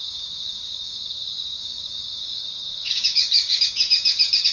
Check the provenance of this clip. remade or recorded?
remade